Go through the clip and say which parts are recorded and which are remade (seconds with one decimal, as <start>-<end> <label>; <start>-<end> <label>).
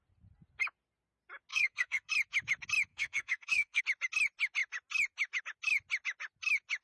0.0-1.5 recorded; 1.5-2.1 remade; 2.1-2.9 recorded; 2.9-3.8 remade; 3.8-6.8 recorded